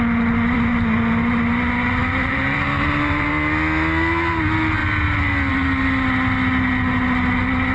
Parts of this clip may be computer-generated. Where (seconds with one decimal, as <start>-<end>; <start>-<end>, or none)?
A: 2.0-3.3